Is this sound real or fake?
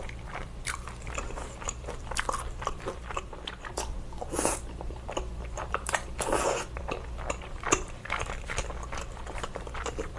fake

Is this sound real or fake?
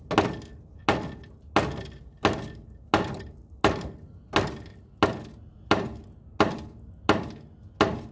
real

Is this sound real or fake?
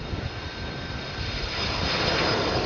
real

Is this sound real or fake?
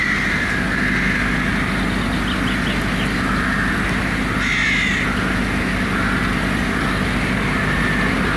real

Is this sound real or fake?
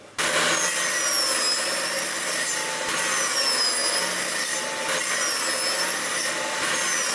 real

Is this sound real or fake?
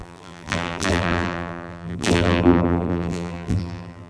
fake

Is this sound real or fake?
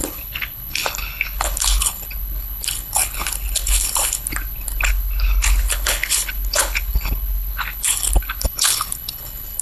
fake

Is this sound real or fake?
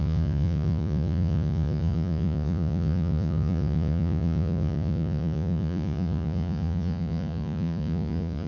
fake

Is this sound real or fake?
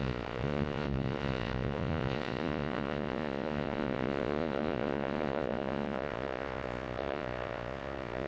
fake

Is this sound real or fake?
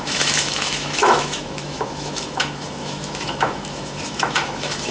fake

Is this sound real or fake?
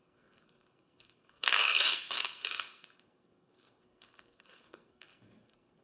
fake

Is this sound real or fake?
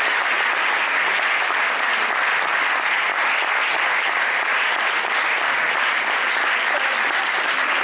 real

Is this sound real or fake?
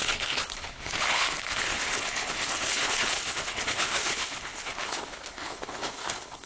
fake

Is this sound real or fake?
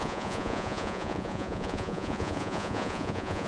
fake